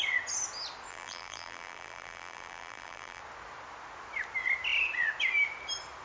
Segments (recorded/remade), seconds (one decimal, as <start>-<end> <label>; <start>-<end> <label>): 0.0-0.9 recorded; 0.9-3.2 remade; 3.2-6.0 recorded